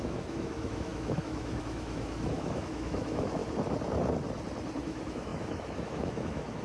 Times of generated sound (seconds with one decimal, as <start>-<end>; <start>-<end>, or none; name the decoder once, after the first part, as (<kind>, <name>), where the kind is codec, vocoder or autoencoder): 0.0-3.4 (autoencoder, DAC-VAE); 4.8-6.6